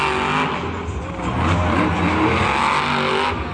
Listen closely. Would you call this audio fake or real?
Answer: real